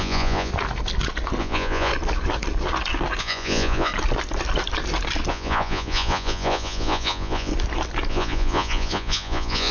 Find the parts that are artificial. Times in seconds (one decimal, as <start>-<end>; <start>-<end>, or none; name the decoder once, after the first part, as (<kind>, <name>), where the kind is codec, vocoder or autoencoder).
0.0-0.5 (vocoder, Vocos); 1.4-1.9; 3.2-3.9; 5.3-7.5; 8.1-9.7